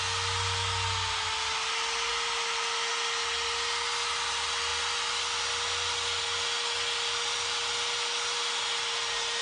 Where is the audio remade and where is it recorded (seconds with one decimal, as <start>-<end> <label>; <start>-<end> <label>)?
0.0-9.4 recorded